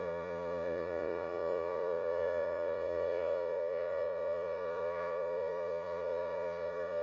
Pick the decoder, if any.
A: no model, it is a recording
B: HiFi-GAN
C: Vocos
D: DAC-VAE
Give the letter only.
C